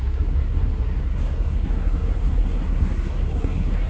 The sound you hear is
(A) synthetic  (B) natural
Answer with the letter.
A